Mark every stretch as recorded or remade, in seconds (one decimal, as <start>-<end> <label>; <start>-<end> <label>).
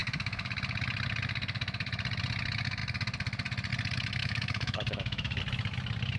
0.0-0.5 remade; 0.5-4.2 recorded; 4.2-5.4 remade; 5.4-6.2 recorded